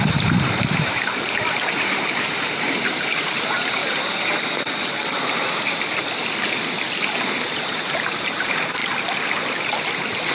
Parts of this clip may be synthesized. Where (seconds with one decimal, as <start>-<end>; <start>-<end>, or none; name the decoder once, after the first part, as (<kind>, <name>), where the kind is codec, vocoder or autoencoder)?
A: 0.0-3.8 (vocoder, BigVGAN v2); 7.4-8.8; 9.8-10.3